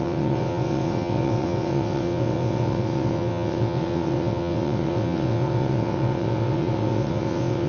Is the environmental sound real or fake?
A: fake